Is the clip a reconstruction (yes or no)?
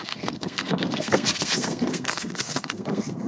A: yes